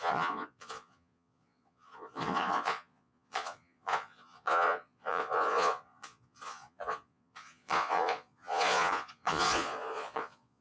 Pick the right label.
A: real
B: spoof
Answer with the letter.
B